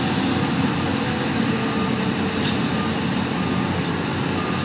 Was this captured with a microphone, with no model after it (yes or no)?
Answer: yes